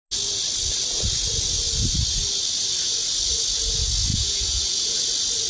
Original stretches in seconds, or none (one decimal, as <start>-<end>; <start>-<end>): 0.0-4.1; 5.0-5.5